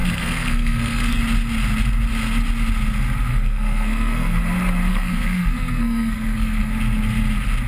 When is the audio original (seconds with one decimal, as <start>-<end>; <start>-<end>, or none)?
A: 1.2-3.3; 4.4-4.9; 6.7-7.7